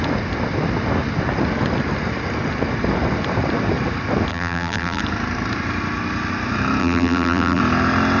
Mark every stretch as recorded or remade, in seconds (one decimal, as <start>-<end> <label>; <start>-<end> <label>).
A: 0.0-4.3 recorded; 4.3-5.0 remade; 5.0-6.8 recorded; 6.8-7.6 remade; 7.6-8.2 recorded

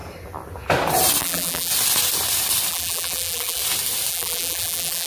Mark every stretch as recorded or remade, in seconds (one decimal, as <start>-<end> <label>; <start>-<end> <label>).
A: 0.0-1.2 recorded; 1.2-1.7 remade; 1.7-2.7 recorded; 2.7-3.6 remade; 3.6-4.1 recorded; 4.1-5.1 remade

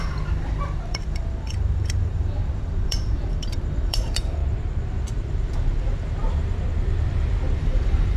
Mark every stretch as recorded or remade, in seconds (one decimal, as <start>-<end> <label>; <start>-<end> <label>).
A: 0.0-4.4 remade; 4.4-7.6 recorded; 7.6-8.2 remade